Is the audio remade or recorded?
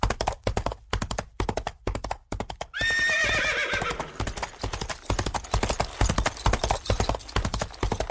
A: recorded